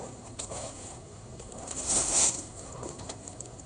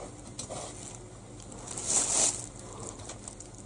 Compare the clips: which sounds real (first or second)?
second